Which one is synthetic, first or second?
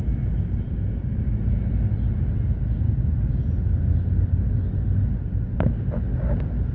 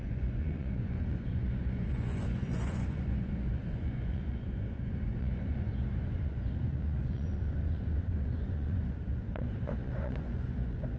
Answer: second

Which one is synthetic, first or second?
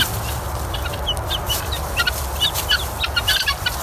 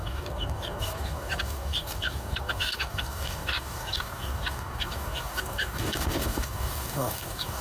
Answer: second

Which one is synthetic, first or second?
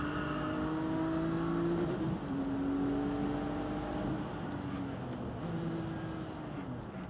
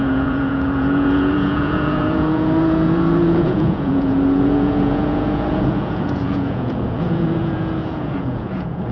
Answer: second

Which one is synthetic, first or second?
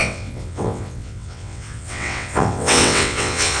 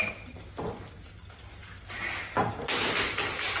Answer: first